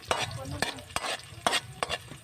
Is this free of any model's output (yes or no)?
yes